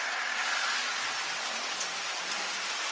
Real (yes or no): yes